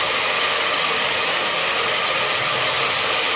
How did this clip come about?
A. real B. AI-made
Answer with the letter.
A